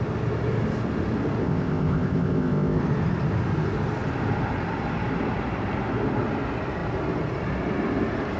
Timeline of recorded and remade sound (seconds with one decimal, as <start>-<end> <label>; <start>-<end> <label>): 0.0-1.4 recorded; 1.4-2.8 remade; 2.8-8.4 recorded